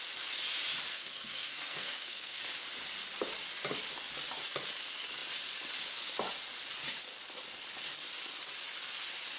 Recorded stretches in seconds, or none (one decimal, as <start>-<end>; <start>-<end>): 0.0-0.9; 2.4-9.4